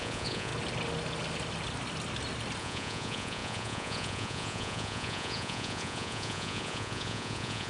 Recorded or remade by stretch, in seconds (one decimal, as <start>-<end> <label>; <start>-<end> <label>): 0.0-0.5 remade; 0.5-2.6 recorded; 2.6-7.7 remade